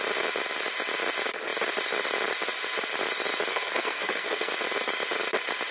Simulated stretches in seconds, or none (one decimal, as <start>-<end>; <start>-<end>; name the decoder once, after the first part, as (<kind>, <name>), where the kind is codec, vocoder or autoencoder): 3.5-4.5 (codec, SNAC)